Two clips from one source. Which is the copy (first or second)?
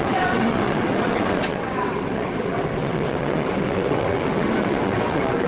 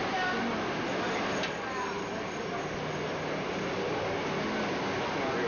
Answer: first